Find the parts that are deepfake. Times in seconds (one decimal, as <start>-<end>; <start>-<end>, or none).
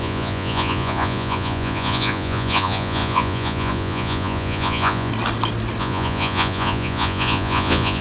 0.0-5.1; 5.8-8.0